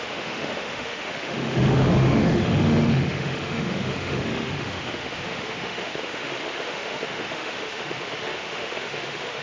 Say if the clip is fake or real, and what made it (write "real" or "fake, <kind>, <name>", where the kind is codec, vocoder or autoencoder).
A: fake, autoencoder, DAC-VAE